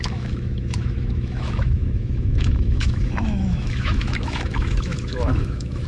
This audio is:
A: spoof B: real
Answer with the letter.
A